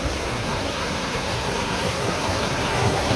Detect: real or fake fake